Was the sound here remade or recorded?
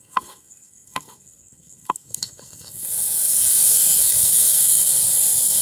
remade